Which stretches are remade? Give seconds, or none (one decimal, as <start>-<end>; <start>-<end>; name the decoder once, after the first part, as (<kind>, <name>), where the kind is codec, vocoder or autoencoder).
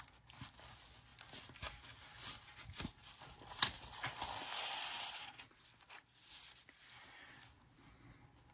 none